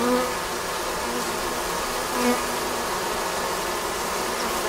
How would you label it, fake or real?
real